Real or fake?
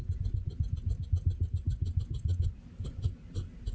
real